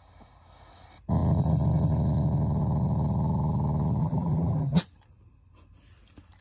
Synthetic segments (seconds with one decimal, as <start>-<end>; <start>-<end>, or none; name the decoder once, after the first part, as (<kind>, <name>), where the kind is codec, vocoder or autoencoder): 4.0-4.8 (vocoder, BigVGAN v2)